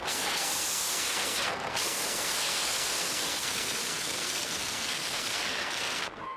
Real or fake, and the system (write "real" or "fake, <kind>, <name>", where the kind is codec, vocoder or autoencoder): fake, codec, SNAC